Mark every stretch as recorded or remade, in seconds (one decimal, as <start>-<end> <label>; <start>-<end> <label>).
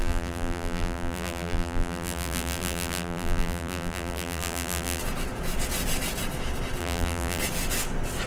0.0-5.0 remade; 5.0-6.8 recorded; 6.8-7.4 remade; 7.4-8.3 recorded